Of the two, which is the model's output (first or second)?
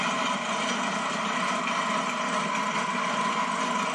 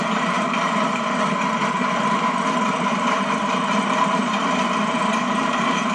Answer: second